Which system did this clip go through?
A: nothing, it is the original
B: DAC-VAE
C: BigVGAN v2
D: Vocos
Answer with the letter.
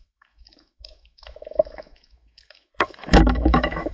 B